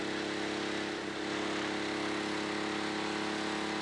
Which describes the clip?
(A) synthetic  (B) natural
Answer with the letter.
B